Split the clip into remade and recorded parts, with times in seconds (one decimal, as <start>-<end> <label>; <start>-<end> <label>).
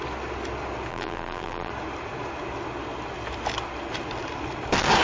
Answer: 0.0-0.9 recorded; 0.9-1.7 remade; 1.7-5.0 recorded